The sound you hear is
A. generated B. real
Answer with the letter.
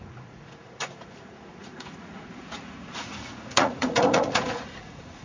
A